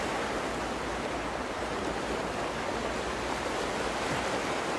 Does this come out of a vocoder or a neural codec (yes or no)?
no